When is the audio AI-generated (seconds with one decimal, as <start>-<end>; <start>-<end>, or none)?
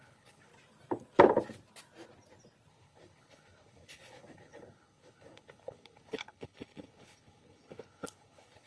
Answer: 0.0-0.5; 2.7-8.7